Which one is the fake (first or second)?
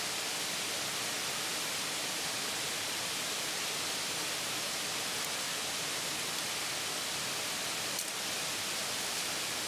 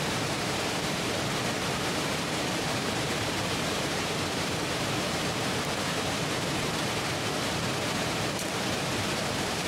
second